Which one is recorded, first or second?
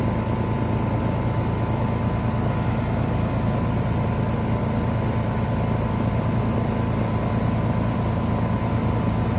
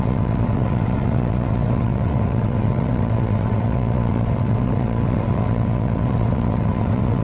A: first